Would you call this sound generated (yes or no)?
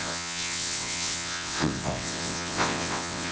yes